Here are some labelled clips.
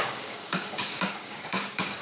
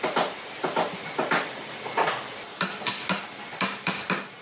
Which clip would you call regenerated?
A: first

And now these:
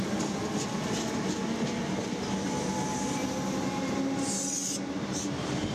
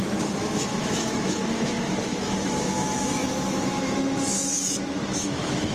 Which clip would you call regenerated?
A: second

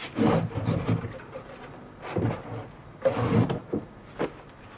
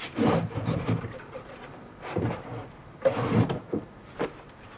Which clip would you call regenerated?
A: second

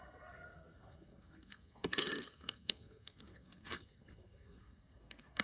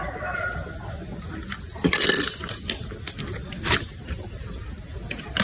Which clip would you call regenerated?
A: first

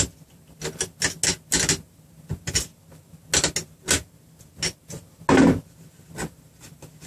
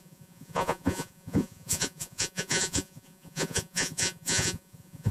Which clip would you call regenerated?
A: second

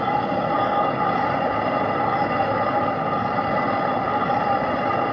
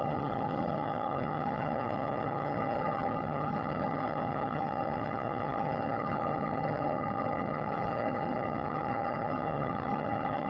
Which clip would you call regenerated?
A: second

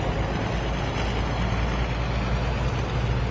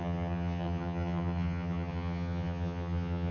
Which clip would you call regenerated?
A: second